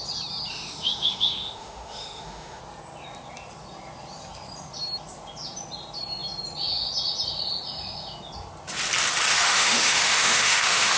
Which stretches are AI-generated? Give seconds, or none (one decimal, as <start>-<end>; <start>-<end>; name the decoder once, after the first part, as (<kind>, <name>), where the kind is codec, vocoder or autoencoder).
0.5-2.6 (autoencoder, DAC-VAE); 9.3-11.0